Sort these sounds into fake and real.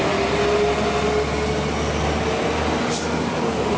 real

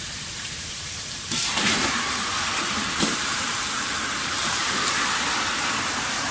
fake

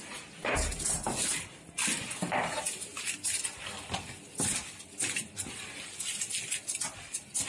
real